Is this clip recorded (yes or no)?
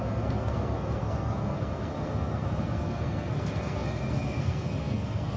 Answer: no